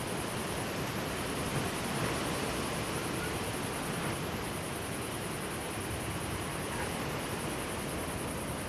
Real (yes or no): yes